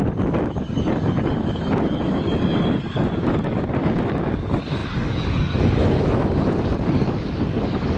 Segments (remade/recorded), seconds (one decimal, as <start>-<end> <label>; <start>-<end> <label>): 0.0-8.0 remade